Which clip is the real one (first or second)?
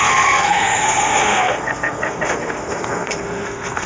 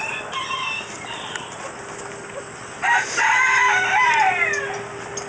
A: second